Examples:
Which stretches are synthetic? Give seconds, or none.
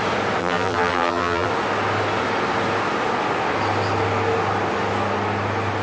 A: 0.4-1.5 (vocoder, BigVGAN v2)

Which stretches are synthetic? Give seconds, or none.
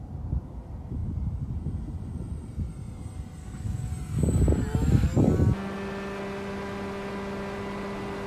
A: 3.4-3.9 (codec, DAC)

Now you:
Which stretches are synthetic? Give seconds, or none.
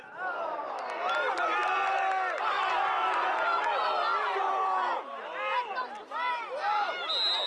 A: none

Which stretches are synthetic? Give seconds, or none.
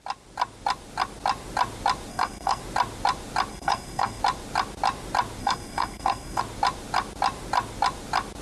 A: 2.1-2.6 (codec, SNAC); 3.5-4.2; 5.4-6.4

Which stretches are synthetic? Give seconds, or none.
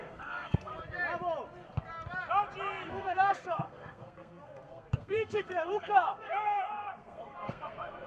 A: 0.0-0.7 (codec, SNAC); 2.9-8.1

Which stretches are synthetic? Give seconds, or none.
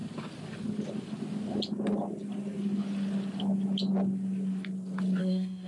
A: 5.2-5.7 (codec, SNAC)